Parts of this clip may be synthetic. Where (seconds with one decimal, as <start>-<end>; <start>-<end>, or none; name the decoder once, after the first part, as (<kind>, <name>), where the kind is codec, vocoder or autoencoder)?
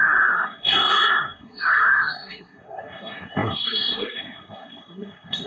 0.0-5.5 (codec, SNAC)